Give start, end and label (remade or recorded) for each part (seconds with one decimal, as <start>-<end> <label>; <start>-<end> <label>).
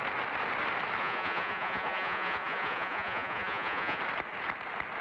0.0-1.0 recorded; 1.0-4.0 remade; 4.0-5.0 recorded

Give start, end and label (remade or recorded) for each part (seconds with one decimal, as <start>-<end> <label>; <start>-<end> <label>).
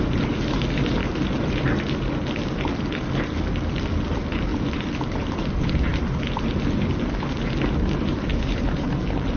0.0-1.0 recorded; 1.0-1.6 remade; 1.6-8.3 recorded; 8.3-8.9 remade; 8.9-9.4 recorded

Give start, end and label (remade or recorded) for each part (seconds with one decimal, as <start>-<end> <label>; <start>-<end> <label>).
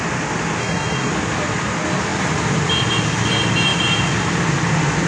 0.0-0.6 recorded; 0.6-1.1 remade; 1.1-5.1 recorded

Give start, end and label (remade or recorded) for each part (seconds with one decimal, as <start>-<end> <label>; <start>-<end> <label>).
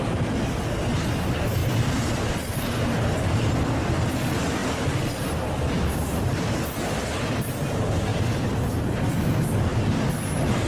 0.0-10.7 recorded